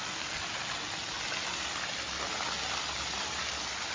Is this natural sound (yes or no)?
yes